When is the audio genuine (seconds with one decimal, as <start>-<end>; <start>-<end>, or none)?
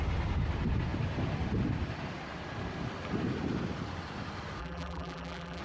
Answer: 0.0-4.6